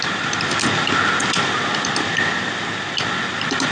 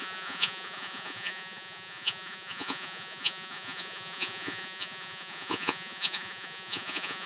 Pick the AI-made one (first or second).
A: second